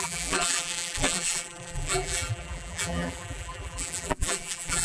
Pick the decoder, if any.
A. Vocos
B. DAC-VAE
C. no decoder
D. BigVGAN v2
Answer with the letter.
D